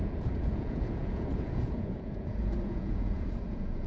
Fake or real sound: fake